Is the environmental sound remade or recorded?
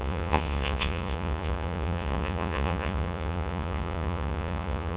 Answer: remade